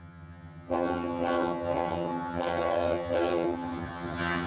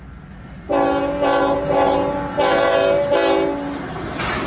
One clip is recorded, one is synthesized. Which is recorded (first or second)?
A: second